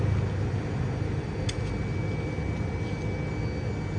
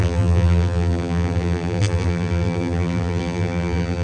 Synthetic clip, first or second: second